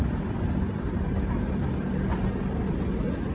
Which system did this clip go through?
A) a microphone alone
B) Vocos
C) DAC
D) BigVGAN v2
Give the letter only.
A